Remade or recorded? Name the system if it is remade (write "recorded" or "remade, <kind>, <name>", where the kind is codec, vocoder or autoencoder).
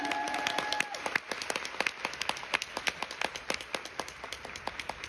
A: recorded